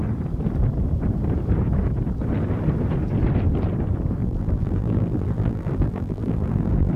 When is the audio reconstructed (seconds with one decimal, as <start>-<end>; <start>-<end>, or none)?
4.2-7.0